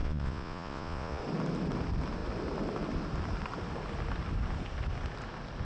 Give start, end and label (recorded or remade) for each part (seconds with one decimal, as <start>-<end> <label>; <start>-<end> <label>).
0.0-1.2 remade; 1.2-5.6 recorded